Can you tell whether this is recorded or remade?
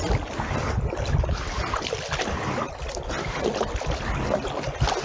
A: recorded